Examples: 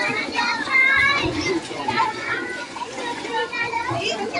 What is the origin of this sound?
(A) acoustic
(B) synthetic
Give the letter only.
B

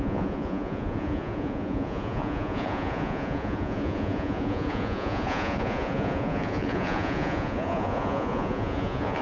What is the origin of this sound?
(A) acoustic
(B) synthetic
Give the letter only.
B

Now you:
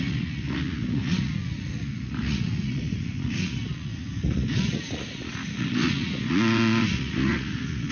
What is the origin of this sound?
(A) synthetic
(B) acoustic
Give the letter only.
A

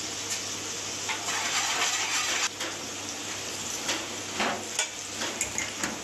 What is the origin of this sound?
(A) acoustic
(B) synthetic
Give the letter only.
A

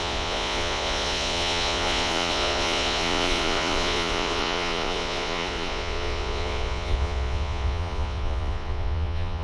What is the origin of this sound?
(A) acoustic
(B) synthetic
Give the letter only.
B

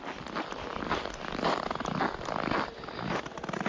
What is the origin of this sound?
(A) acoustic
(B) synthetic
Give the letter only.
A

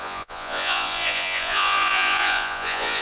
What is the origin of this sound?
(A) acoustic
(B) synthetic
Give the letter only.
B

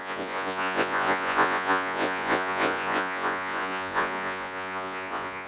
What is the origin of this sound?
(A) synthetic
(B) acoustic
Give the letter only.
A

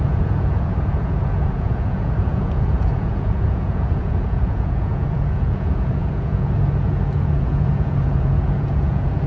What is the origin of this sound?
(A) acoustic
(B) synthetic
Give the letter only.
B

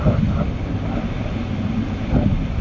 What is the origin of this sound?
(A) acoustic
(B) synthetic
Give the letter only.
A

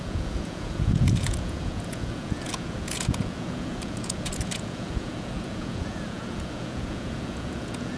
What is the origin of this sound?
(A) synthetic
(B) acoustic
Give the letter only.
A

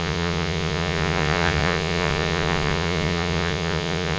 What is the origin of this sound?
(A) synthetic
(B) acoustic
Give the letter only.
A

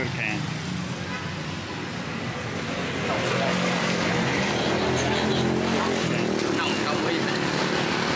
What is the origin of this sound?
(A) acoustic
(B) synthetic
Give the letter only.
A